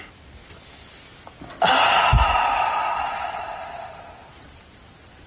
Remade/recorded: recorded